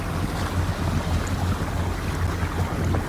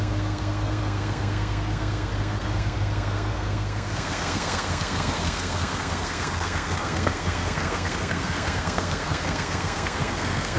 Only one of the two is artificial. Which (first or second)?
second